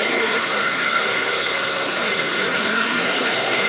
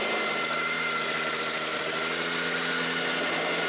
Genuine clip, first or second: second